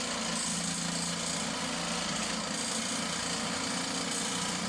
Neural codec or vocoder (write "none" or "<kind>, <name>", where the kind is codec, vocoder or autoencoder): none